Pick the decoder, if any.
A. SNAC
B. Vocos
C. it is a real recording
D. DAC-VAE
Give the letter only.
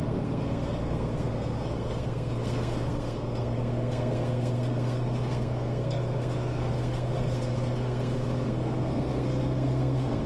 A